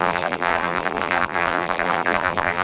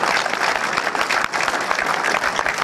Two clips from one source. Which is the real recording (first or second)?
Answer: second